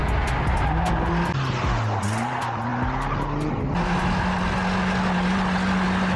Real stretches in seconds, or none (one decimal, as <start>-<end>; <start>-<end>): 0.0-6.2